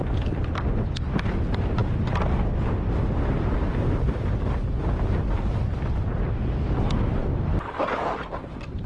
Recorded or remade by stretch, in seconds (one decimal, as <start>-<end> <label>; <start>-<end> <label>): 0.0-7.2 recorded; 7.2-8.3 remade; 8.3-8.9 recorded